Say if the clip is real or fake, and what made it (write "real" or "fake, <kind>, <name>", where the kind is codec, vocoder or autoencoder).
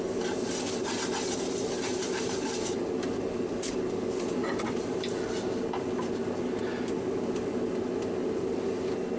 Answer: real